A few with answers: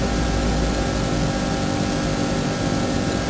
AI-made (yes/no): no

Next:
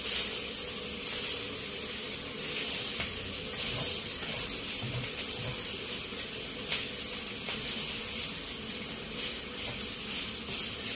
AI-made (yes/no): no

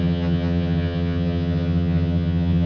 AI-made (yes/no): yes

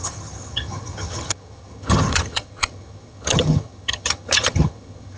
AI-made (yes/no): yes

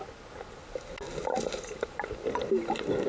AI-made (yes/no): no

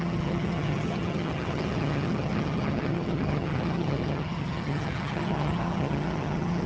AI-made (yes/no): yes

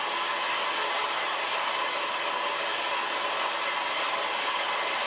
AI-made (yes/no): no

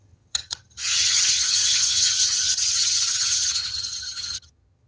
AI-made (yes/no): yes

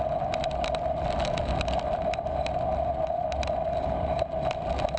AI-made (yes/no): no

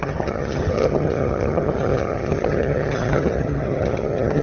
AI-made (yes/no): yes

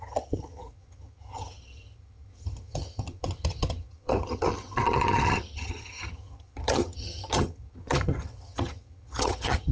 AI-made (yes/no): yes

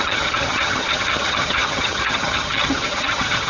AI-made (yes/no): yes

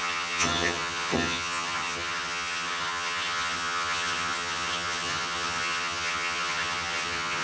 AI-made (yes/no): yes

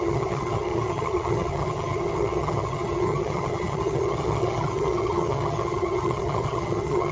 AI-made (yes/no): yes